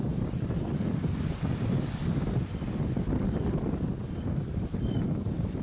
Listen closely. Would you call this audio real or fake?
real